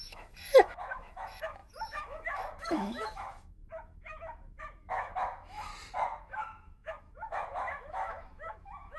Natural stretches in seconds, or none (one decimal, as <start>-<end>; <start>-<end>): 5.7-6.2